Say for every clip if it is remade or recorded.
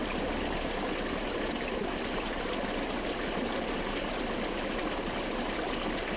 recorded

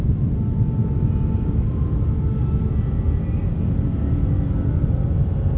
recorded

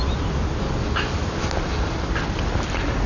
recorded